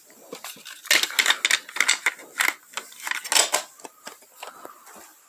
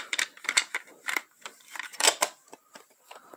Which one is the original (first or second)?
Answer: first